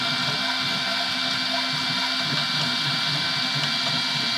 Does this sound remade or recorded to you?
recorded